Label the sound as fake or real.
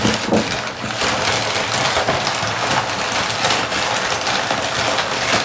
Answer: real